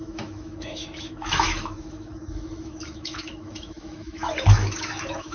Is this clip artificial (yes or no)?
yes